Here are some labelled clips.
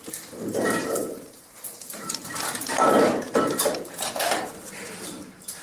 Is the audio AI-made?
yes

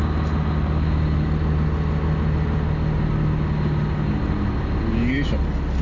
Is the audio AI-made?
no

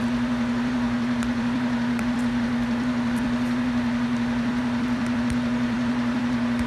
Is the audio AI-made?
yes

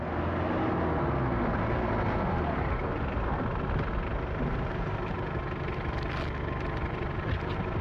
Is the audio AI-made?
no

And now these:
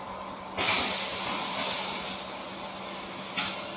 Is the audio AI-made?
no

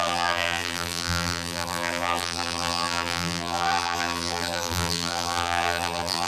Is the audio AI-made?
yes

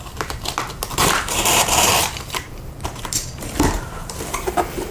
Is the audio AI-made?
yes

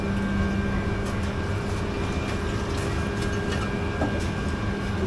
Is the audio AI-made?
no